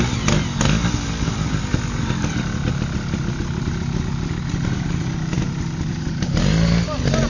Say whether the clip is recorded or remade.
recorded